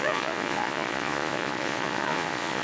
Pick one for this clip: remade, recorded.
remade